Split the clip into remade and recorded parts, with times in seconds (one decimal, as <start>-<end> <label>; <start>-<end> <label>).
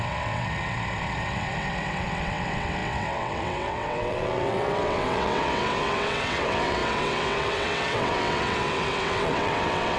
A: 0.0-10.0 remade